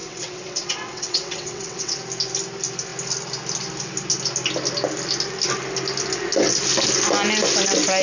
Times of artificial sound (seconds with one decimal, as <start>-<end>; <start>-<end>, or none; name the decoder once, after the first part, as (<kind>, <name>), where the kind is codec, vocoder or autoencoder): 0.0-2.0 (vocoder, WaveNeXt)